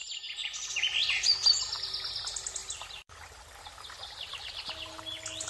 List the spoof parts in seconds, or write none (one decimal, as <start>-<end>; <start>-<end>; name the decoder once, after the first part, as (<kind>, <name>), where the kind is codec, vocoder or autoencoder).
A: 0.0-0.7 (vocoder, BigVGAN v2); 2.6-3.4